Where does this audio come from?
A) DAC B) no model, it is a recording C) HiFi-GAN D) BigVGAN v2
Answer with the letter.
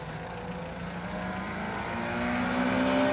B